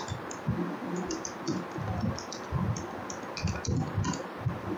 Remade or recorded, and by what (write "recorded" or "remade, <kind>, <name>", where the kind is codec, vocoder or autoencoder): recorded